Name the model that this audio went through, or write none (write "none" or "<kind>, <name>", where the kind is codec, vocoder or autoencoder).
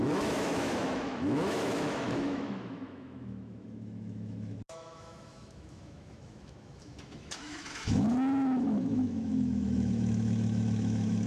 autoencoder, DAC-VAE